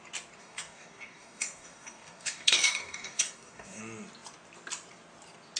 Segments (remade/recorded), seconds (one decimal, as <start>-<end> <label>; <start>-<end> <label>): 0.0-0.4 recorded; 0.4-3.8 remade; 3.8-5.6 recorded